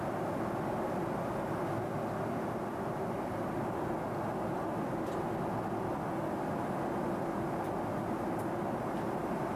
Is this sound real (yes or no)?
yes